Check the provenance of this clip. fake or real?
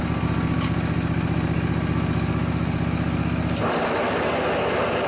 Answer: real